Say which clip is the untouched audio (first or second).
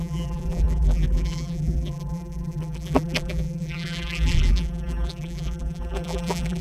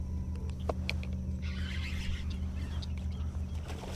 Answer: second